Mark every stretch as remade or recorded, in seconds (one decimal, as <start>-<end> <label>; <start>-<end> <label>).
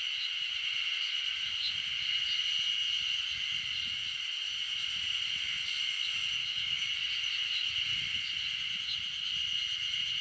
0.0-6.4 recorded; 6.4-6.9 remade; 6.9-10.2 recorded